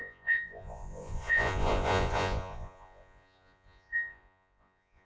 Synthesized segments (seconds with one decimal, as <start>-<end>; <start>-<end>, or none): 0.0-5.0